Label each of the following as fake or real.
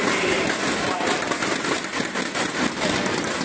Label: real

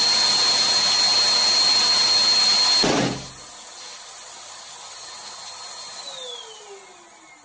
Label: real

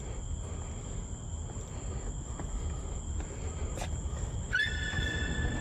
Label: real